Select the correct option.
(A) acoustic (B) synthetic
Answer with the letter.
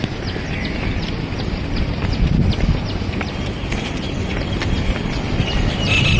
A